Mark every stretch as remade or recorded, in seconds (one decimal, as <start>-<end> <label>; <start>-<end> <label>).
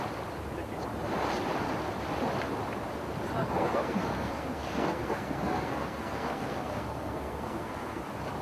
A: 0.0-3.4 recorded; 3.4-8.0 remade; 8.0-8.4 recorded